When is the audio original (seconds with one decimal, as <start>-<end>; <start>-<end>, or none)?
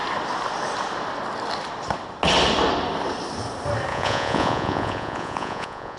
0.0-3.9